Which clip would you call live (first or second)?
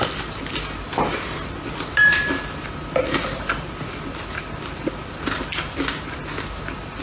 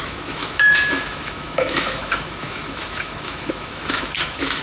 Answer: first